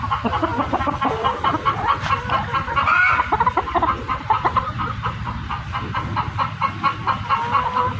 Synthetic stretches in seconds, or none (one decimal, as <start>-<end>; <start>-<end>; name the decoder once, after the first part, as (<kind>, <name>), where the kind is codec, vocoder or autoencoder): none